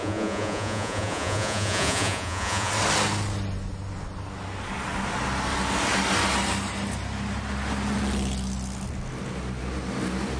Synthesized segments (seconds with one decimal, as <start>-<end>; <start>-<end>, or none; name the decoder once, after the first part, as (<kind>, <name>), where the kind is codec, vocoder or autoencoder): 0.0-2.7 (vocoder, Vocos)